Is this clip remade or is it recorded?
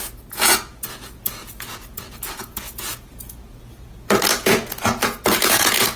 remade